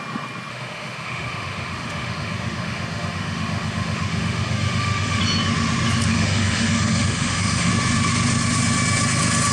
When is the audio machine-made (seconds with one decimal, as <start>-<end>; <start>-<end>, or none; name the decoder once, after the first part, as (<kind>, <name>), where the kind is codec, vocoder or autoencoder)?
0.5-5.2 (autoencoder, DAC-VAE); 6.1-7.7